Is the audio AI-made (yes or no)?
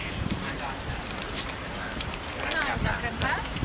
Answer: yes